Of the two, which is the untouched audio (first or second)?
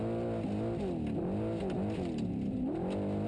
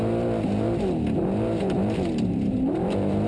first